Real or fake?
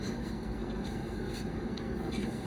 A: fake